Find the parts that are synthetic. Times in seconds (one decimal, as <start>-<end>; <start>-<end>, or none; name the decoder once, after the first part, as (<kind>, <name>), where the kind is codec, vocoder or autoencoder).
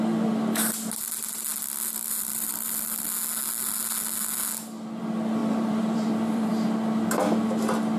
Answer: 5.4-6.5 (vocoder, BigVGAN v2)